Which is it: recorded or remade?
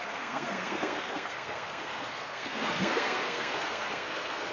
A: remade